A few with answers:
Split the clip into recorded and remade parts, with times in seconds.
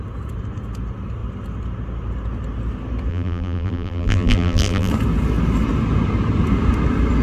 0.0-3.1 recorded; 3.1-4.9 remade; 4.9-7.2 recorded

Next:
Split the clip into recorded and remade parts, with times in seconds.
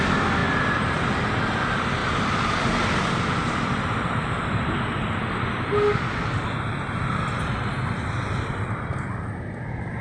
0.0-2.0 recorded; 2.0-4.8 remade; 4.8-10.0 recorded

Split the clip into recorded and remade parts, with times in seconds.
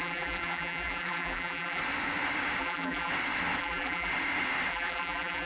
0.0-1.8 remade; 1.8-2.6 recorded; 2.6-3.1 remade; 3.1-3.6 recorded; 3.6-4.1 remade; 4.1-4.7 recorded; 4.7-5.5 remade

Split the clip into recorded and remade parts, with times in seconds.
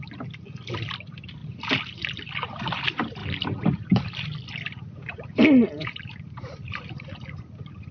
0.0-3.2 recorded; 3.2-4.1 remade; 4.1-5.8 recorded; 5.8-7.1 remade; 7.1-7.9 recorded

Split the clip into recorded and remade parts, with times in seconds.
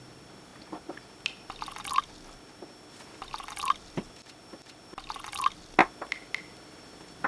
0.0-0.5 recorded; 0.5-1.0 remade; 1.0-7.3 recorded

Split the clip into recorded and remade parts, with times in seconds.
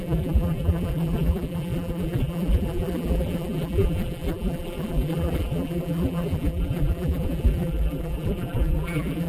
0.0-9.3 remade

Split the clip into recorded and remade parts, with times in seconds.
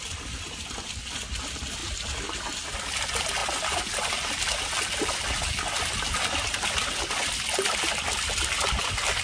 0.0-9.2 recorded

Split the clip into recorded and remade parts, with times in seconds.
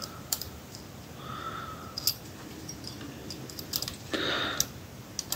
0.0-0.8 remade; 0.8-5.4 recorded